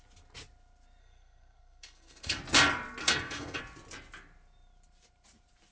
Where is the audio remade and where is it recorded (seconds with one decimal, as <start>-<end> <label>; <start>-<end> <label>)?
0.0-1.0 recorded; 1.0-2.4 remade; 2.4-3.0 recorded; 3.0-3.6 remade; 3.6-5.7 recorded